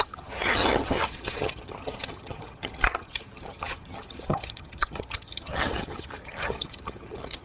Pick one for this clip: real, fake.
fake